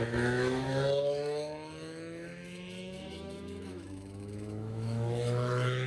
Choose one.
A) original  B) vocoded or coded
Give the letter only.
B